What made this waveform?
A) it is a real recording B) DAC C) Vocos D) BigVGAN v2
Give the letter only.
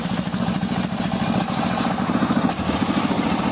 A